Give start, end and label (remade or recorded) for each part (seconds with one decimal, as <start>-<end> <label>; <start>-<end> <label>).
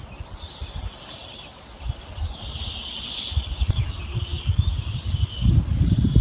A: 0.0-1.2 recorded; 1.2-1.9 remade; 1.9-4.3 recorded; 4.3-6.2 remade